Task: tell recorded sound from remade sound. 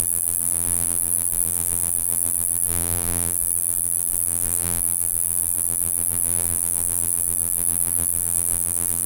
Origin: remade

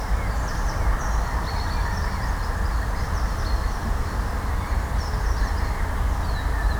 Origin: recorded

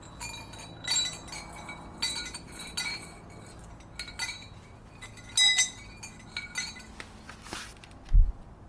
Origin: recorded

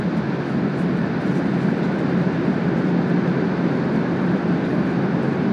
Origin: recorded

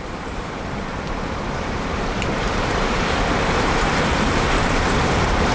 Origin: remade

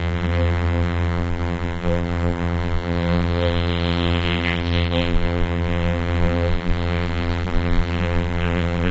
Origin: remade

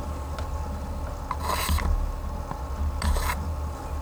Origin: recorded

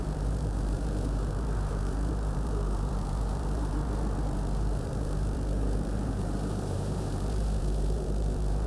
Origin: remade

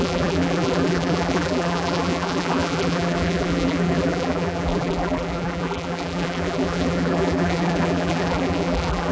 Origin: remade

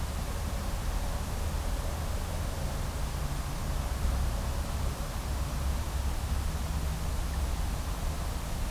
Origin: recorded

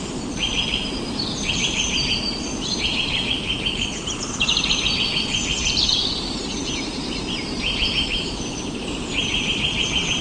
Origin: remade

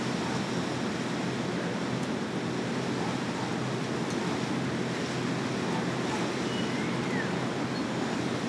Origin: recorded